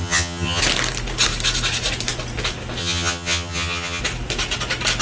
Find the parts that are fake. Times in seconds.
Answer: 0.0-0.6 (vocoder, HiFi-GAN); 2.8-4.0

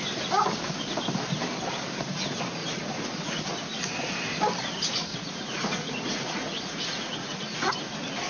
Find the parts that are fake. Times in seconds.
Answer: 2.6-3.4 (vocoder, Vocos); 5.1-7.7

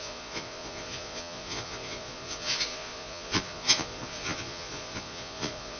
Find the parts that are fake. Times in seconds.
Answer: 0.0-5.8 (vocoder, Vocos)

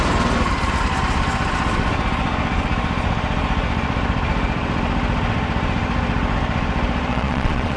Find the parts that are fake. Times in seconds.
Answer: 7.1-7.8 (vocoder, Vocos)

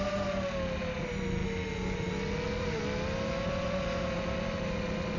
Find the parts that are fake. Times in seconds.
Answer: none